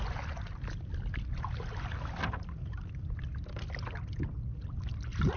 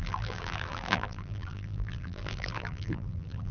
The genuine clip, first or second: first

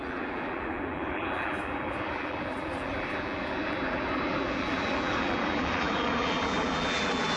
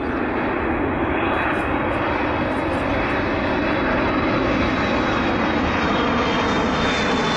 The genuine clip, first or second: second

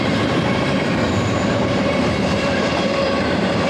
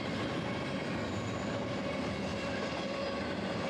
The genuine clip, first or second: second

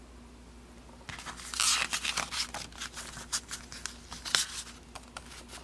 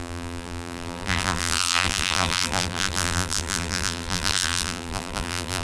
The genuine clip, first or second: first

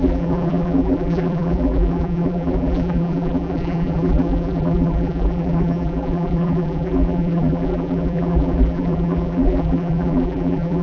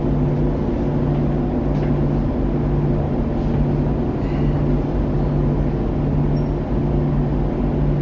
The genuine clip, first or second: second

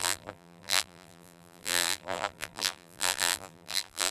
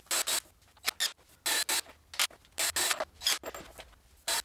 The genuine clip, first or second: second